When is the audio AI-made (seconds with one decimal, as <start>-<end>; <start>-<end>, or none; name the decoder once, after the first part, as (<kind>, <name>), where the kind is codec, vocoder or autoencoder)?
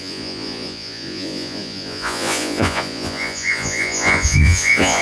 0.0-5.0 (vocoder, Vocos)